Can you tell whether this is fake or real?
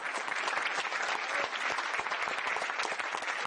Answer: real